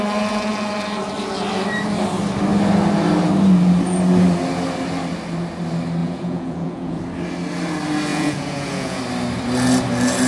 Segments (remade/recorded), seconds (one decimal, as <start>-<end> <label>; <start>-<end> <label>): 0.0-6.0 recorded; 6.0-7.0 remade; 7.0-8.1 recorded; 8.1-9.0 remade; 9.0-10.3 recorded

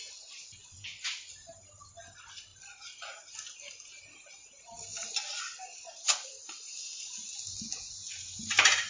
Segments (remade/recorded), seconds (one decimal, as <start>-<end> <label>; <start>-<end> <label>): 0.0-8.9 recorded

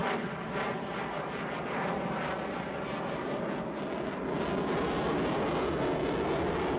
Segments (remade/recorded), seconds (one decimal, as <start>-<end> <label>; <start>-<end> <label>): 0.0-6.8 recorded

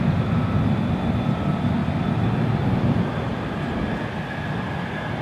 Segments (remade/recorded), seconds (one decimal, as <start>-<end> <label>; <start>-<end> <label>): 0.0-5.2 recorded

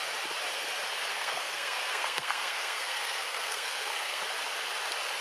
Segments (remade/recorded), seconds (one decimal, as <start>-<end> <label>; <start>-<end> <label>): 0.0-1.1 recorded; 1.1-4.2 remade; 4.2-5.2 recorded

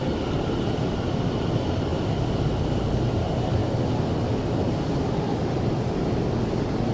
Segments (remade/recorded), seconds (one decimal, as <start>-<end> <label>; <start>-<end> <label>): 0.0-6.9 recorded

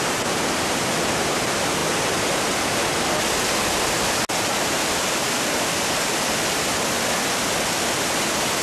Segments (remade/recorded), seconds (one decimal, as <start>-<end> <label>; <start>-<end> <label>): 0.0-8.6 recorded

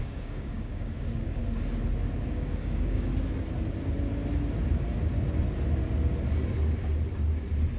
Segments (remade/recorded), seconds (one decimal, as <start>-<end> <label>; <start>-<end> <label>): 0.0-1.4 remade; 1.4-2.3 recorded; 2.3-3.1 remade; 3.1-7.8 recorded